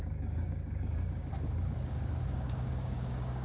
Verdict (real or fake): fake